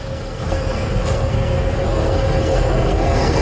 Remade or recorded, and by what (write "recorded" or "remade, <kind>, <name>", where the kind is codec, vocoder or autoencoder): remade, codec, SNAC